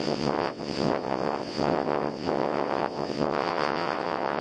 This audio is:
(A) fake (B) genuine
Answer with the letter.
A